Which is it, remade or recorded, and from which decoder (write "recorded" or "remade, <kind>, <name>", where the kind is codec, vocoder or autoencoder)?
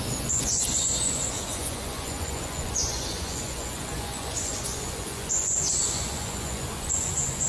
remade, vocoder, Vocos